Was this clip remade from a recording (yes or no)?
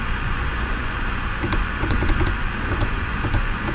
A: yes